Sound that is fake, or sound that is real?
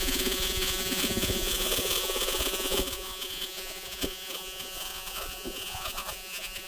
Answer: fake